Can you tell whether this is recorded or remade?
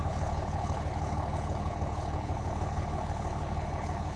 remade